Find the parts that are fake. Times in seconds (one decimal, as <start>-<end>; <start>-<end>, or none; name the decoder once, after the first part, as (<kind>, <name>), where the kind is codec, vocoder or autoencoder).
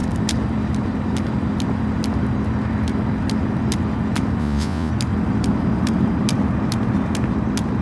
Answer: 4.4-4.9 (vocoder, Vocos)